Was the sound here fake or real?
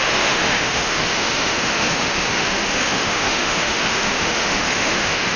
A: fake